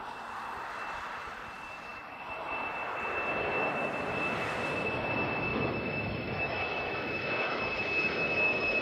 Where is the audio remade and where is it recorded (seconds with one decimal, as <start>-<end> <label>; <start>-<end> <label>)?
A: 0.0-5.5 recorded; 5.5-8.8 remade